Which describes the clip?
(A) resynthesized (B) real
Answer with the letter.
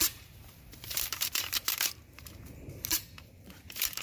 A